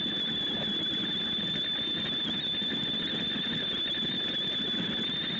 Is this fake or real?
real